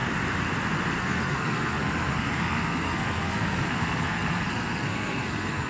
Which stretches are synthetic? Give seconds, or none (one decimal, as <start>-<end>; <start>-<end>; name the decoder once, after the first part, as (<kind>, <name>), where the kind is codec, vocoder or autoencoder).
1.0-5.7 (codec, SNAC)